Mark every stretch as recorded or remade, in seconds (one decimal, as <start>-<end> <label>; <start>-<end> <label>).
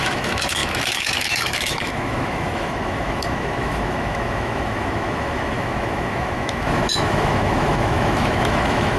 0.0-9.0 remade